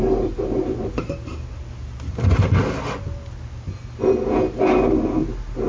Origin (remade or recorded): recorded